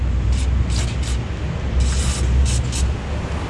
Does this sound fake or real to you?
real